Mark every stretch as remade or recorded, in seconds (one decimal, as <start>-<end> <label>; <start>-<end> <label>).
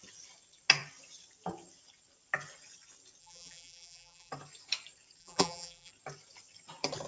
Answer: 0.0-3.2 recorded; 3.2-4.3 remade; 4.3-5.2 recorded; 5.2-5.9 remade; 5.9-7.1 recorded